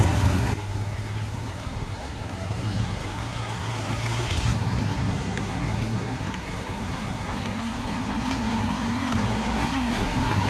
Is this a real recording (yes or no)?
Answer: no